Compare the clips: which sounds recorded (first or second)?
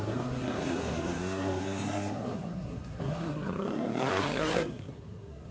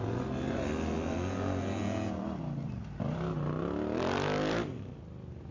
second